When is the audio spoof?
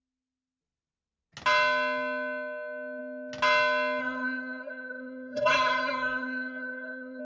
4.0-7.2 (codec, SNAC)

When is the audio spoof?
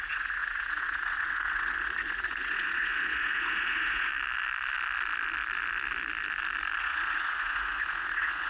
0.0-4.1 (vocoder, Vocos); 6.8-8.5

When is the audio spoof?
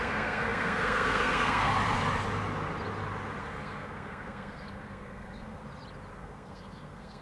0.0-1.7 (codec, SNAC); 3.4-5.6; 6.1-7.2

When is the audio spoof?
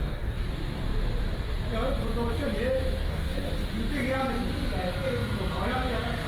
0.0-0.5 (codec, DAC); 3.0-3.5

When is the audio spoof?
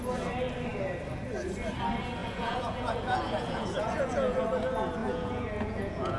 2.2-4.4 (vocoder, Vocos); 5.0-6.2